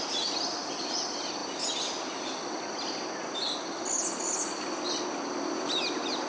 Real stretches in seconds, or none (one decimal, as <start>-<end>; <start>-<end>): 0.0-6.3